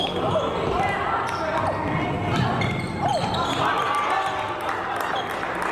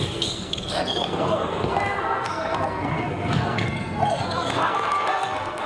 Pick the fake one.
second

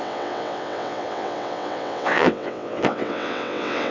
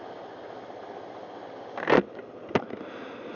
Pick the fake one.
first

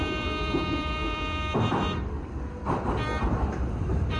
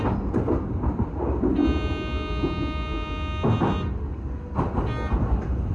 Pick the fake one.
first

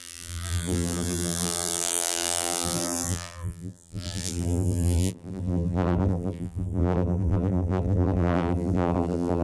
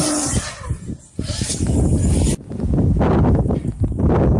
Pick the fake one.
first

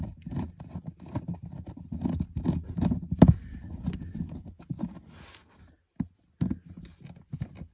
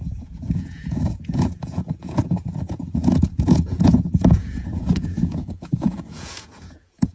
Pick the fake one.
second